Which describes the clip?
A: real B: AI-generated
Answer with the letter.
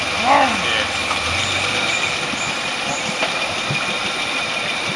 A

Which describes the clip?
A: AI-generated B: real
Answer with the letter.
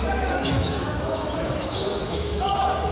A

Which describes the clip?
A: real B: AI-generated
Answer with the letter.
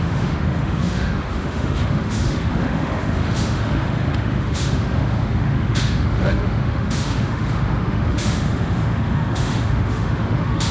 B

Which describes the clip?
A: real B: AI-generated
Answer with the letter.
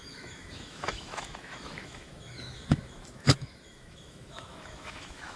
B